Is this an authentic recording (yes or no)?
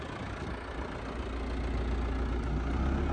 yes